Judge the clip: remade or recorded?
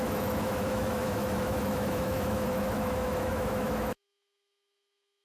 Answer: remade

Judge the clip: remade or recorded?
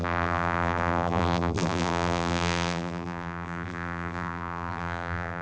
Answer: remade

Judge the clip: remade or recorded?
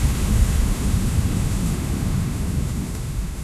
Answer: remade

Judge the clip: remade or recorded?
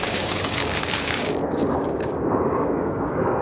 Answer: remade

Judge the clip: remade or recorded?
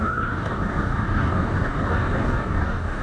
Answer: remade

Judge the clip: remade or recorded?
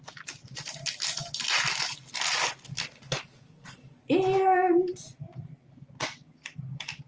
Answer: recorded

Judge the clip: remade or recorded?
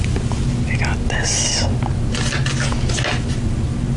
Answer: recorded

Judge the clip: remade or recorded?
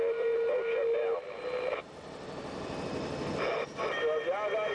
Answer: recorded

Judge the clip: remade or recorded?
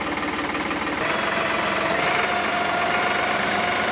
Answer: recorded